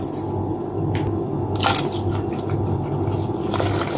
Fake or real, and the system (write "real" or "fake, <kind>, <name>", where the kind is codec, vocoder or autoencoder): real